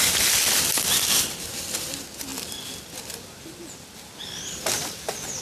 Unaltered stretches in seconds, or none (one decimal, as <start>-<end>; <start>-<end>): 0.0-5.4